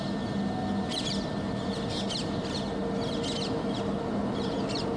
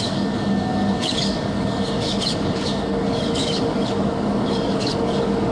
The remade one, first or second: second